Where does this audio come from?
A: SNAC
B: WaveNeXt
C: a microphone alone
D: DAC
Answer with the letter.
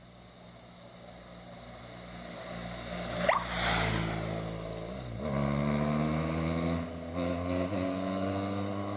C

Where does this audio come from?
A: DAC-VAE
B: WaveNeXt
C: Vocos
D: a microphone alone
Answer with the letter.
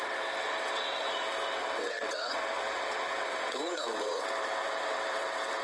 B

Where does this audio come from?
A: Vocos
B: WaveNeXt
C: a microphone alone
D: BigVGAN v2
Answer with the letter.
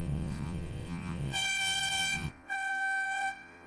B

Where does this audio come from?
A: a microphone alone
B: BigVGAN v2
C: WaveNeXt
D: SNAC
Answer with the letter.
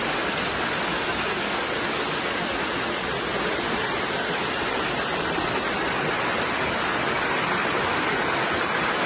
A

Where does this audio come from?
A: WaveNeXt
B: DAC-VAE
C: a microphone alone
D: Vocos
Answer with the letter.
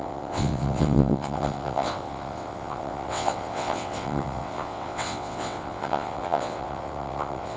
A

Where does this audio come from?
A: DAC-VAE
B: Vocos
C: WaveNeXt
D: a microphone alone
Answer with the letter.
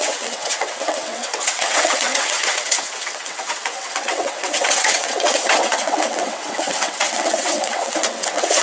C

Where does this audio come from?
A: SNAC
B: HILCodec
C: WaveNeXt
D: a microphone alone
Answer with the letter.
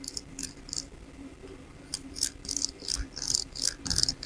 D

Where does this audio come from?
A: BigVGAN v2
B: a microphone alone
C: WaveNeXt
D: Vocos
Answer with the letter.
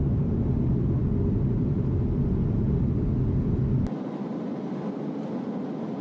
B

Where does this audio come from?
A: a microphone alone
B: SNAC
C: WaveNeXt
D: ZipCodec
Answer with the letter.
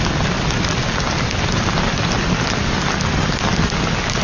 A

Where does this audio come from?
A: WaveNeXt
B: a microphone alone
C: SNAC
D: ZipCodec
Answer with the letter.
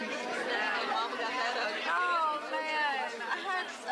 B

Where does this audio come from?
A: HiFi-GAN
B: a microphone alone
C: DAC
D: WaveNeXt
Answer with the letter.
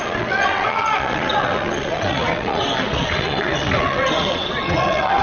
D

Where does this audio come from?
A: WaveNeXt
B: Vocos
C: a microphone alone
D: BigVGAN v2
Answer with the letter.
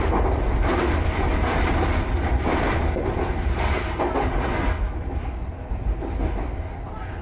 C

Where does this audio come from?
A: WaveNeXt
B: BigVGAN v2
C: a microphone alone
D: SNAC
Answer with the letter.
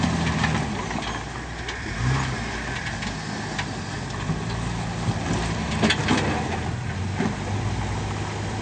C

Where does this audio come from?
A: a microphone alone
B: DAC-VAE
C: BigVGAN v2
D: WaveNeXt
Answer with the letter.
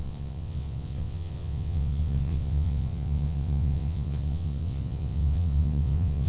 D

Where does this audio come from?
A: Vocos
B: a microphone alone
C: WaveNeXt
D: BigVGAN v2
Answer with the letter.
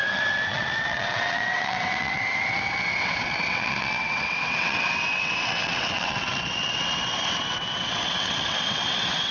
C